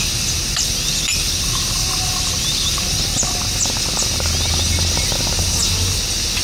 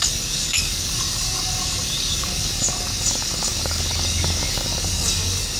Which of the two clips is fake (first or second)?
second